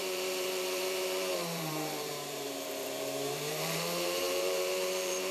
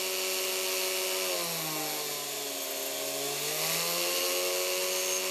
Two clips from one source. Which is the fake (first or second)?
first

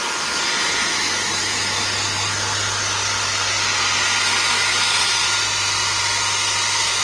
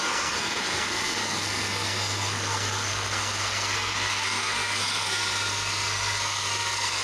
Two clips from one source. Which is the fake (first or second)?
second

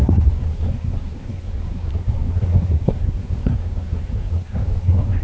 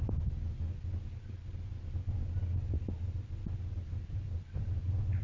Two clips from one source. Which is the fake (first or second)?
first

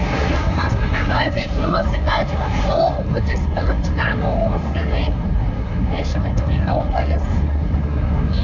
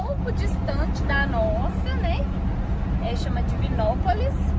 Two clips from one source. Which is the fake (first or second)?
first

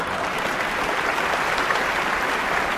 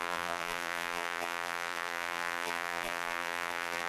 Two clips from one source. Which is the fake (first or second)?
second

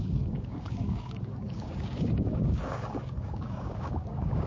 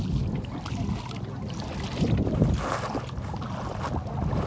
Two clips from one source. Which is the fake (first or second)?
first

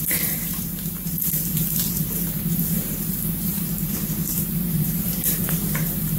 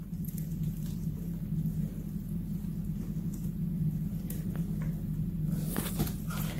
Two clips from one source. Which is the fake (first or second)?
first